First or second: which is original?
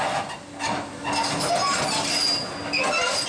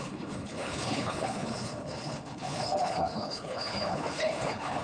first